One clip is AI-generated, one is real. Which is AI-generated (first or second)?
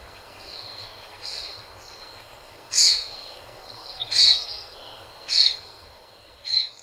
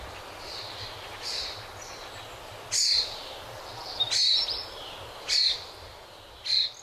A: first